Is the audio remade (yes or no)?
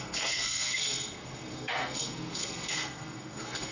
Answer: yes